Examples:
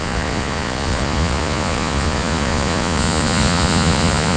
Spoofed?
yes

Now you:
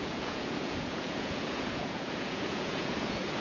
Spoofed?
yes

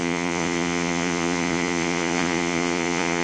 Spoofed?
yes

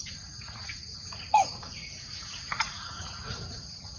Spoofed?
yes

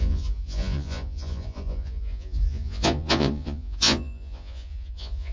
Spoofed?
yes